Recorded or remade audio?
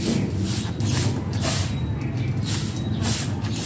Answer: recorded